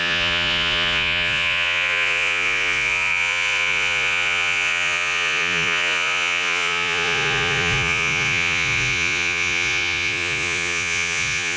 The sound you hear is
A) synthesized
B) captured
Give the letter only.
A